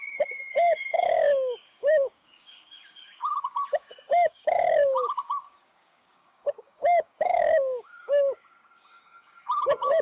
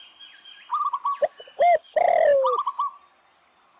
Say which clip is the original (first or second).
second